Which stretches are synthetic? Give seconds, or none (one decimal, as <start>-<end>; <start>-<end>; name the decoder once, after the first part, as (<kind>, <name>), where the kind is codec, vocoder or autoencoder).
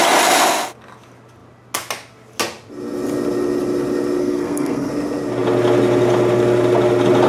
4.2-4.9 (codec, SNAC)